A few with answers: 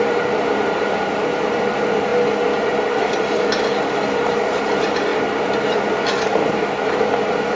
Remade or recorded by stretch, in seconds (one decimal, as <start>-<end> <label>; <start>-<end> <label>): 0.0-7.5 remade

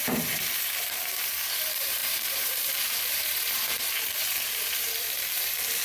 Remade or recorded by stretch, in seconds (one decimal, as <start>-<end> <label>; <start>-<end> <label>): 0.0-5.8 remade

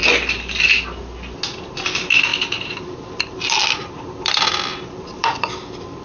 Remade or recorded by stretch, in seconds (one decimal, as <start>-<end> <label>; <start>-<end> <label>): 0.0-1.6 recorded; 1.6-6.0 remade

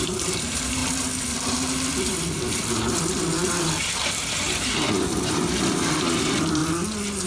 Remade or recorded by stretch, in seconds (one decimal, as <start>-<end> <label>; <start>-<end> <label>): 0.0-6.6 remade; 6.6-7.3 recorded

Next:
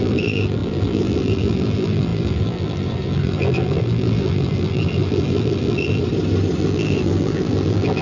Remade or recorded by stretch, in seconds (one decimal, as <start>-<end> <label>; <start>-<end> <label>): 0.0-6.0 remade; 6.0-6.6 recorded; 6.6-8.0 remade

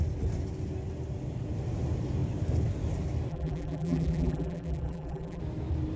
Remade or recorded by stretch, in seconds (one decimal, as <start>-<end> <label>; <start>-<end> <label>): 0.0-3.3 recorded; 3.3-5.4 remade; 5.4-6.0 recorded